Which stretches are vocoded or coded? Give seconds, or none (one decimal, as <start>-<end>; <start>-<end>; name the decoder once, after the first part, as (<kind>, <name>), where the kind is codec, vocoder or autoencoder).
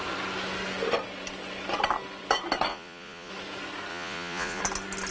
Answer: 2.7-3.3 (vocoder, Vocos); 3.9-4.6